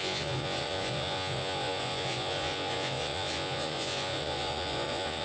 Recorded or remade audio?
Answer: remade